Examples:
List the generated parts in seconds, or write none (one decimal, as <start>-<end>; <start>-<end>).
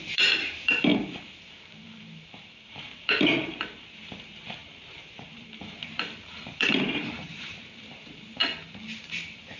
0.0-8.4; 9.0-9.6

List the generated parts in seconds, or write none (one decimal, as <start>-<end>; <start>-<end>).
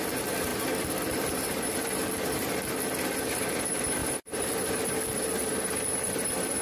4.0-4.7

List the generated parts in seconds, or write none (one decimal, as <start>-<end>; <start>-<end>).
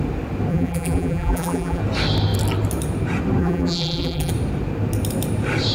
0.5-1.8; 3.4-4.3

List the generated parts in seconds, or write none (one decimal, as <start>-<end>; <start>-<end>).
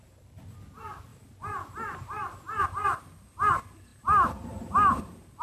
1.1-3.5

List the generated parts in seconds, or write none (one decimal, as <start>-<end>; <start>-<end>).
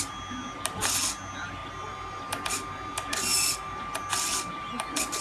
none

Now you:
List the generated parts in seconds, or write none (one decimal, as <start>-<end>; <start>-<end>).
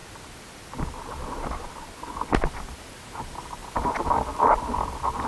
3.2-3.6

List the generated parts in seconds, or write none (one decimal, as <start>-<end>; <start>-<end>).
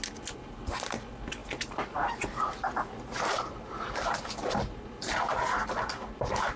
1.4-4.8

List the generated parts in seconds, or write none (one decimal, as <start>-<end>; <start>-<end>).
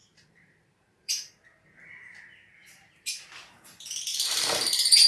0.0-1.3; 2.6-3.3; 4.1-5.1